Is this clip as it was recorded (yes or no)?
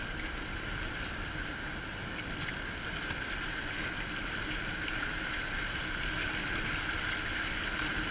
yes